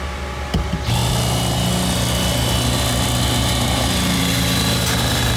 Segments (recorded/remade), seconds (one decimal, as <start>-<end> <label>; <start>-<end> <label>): 0.0-5.4 recorded